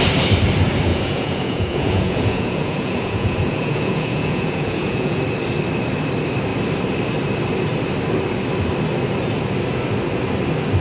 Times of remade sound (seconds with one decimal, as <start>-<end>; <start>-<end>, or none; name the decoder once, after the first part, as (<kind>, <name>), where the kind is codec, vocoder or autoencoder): 0.9-5.2 (vocoder, Vocos)